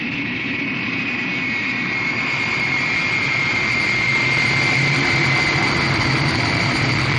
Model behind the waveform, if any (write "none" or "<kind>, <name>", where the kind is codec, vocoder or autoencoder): vocoder, BigVGAN v2